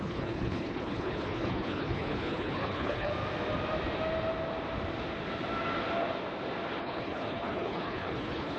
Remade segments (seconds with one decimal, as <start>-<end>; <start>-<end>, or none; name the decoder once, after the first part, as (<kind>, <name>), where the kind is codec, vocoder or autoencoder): 0.0-3.1 (codec, HILCodec); 6.8-8.6